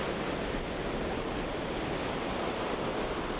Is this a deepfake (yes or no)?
no